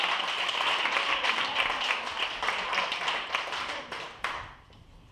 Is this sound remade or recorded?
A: recorded